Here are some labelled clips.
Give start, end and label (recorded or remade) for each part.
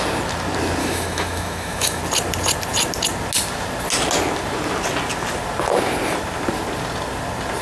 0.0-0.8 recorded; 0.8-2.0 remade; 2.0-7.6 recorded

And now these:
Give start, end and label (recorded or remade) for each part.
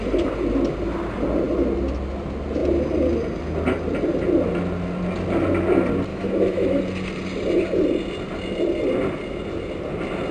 0.0-6.1 recorded; 6.1-6.8 remade; 6.8-10.3 recorded